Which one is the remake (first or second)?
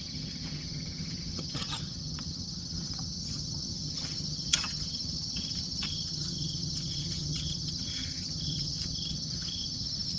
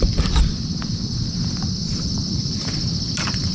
first